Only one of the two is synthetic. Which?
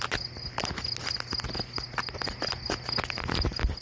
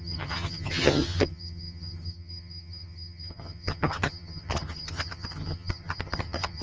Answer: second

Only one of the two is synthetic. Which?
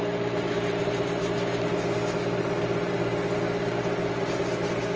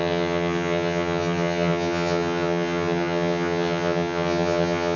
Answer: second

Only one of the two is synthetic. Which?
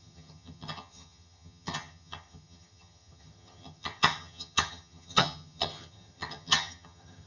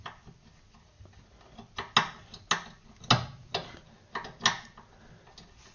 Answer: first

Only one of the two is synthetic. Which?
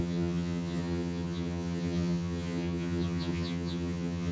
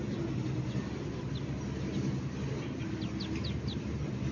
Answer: first